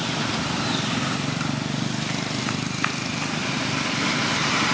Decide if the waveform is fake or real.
fake